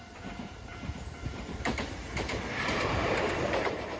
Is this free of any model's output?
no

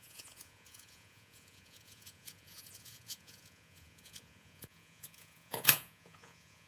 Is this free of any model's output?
no